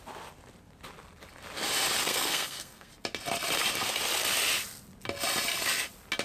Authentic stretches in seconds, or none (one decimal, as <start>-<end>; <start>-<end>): 0.0-2.1; 2.9-6.2